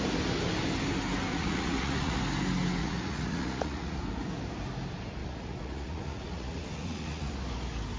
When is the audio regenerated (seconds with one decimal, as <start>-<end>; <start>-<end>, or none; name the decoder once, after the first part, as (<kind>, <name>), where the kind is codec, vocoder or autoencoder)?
1.3-2.2 (vocoder, Vocos); 2.8-4.0; 5.2-7.3